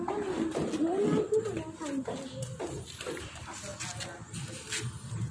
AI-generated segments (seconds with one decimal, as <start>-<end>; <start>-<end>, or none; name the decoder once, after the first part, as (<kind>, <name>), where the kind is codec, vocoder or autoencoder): none